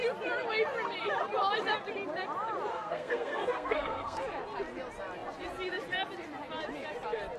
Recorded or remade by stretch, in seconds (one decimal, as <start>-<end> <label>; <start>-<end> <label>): 0.0-2.7 recorded; 2.7-4.2 remade; 4.2-7.4 recorded

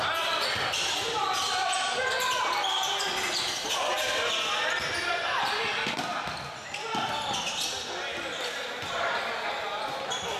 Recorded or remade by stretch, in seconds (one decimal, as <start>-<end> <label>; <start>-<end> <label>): 0.0-10.4 recorded

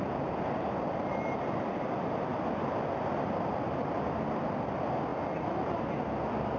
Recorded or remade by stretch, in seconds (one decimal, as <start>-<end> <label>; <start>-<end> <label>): 0.0-6.6 recorded

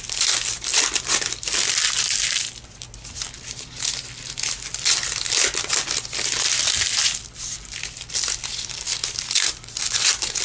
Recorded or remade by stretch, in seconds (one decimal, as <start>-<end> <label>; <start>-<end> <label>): 0.0-10.4 recorded